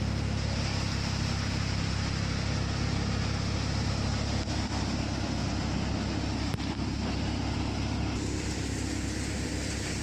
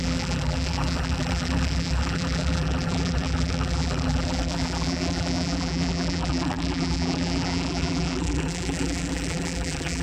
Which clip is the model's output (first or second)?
second